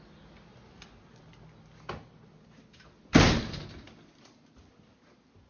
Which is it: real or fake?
real